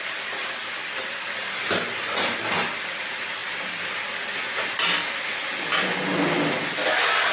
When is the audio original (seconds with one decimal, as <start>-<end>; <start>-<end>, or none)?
0.0-7.3

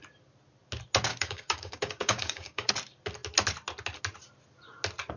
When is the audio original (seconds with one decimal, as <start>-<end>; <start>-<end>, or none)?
0.0-1.1; 2.7-5.2

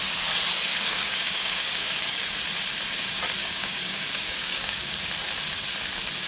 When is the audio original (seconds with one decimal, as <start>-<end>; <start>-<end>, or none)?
0.0-0.7; 2.3-3.4; 5.1-6.3

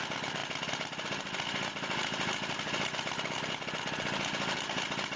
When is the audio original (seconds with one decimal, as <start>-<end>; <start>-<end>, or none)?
0.0-5.2

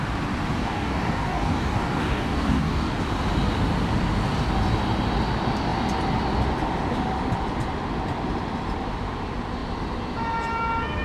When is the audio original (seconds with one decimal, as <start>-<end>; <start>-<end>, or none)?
0.0-0.6; 3.0-11.0

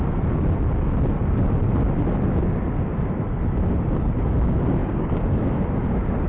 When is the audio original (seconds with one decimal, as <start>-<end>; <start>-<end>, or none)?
0.0-4.8; 5.5-6.3